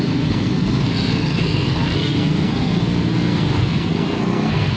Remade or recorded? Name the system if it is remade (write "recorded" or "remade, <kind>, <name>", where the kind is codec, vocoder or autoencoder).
remade, codec, SNAC